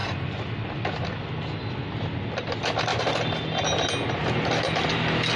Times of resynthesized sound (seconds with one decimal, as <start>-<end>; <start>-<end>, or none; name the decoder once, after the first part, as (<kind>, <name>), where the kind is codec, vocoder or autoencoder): none